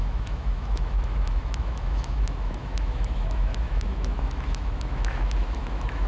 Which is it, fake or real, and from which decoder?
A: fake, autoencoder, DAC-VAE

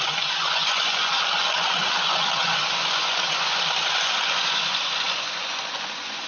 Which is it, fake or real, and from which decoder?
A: fake, vocoder, Vocos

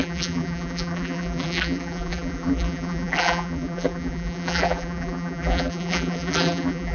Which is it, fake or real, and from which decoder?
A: fake, vocoder, BigVGAN v2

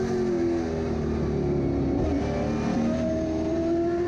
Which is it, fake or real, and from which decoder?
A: real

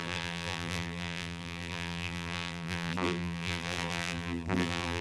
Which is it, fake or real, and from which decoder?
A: fake, vocoder, BigVGAN v2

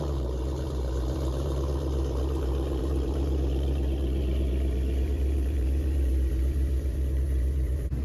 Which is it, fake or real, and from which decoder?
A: fake, vocoder, BigVGAN v2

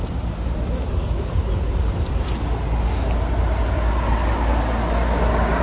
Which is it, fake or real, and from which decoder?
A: real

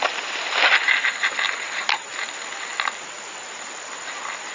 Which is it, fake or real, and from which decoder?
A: real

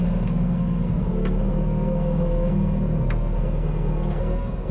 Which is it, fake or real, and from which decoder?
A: fake, codec, SNAC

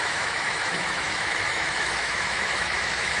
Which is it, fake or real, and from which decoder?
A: fake, autoencoder, DAC-VAE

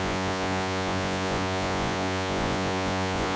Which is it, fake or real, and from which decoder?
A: fake, vocoder, Vocos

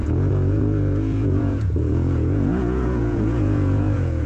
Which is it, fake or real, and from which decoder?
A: fake, vocoder, Vocos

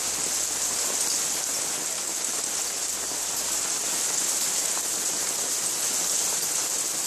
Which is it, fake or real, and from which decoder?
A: real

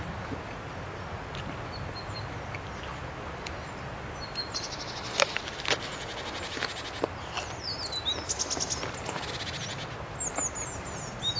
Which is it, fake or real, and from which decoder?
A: real